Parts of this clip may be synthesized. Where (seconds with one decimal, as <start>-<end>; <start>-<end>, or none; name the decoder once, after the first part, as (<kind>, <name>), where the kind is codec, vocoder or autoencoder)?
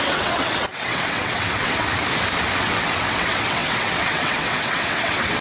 0.0-1.9 (vocoder, WaveNeXt); 2.6-5.4